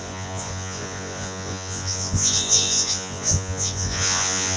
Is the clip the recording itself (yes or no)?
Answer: no